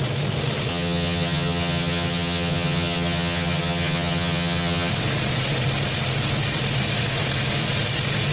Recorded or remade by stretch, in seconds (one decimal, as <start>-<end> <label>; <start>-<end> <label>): 0.0-0.7 recorded; 0.7-4.9 remade; 4.9-8.3 recorded